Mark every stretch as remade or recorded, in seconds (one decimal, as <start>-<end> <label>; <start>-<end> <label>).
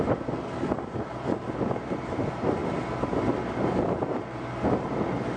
0.0-5.4 recorded